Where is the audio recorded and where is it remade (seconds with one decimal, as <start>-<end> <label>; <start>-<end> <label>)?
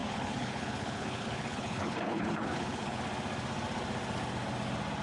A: 0.0-3.0 remade; 3.0-5.0 recorded